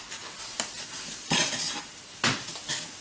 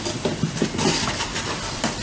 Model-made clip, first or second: second